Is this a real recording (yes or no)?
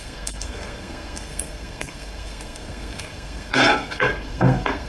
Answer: no